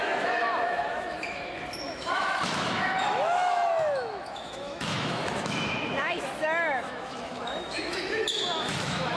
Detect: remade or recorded remade